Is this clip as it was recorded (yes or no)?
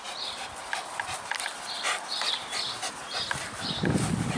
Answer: yes